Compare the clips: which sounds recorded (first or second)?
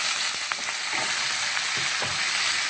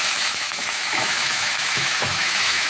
first